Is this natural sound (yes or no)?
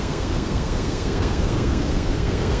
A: no